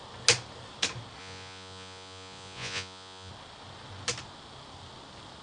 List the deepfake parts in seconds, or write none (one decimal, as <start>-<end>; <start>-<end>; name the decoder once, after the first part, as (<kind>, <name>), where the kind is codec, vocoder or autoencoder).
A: 1.2-3.3 (vocoder, Vocos)